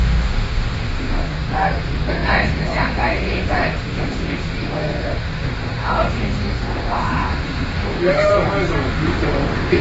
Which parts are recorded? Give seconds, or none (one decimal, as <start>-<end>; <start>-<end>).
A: 8.3-8.9